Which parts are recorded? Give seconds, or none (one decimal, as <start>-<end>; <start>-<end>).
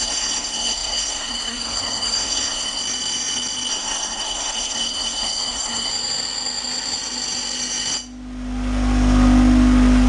2.8-3.7; 5.9-10.1